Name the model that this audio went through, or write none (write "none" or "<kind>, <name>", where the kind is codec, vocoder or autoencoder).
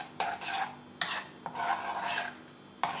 none